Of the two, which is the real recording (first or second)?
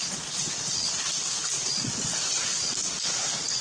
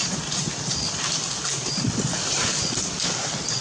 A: first